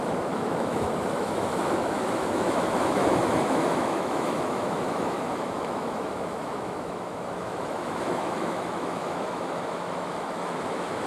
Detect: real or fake fake